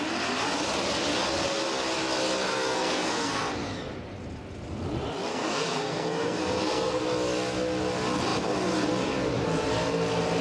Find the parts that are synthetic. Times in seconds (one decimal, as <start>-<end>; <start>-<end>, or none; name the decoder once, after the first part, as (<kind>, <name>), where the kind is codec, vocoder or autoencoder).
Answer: 2.5-3.4 (codec, SNAC); 5.3-7.0